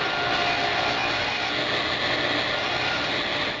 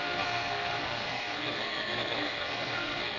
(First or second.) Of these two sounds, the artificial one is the second